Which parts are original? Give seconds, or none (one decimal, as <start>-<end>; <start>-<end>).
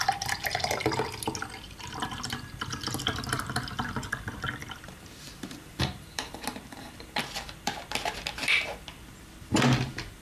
0.0-4.6; 9.1-10.2